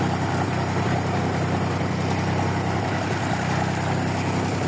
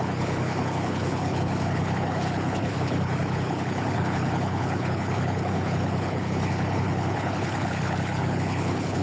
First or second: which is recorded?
first